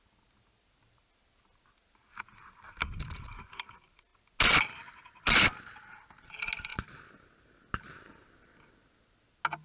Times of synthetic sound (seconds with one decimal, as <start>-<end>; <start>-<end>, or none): none